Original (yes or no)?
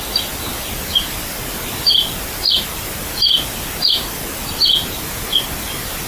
yes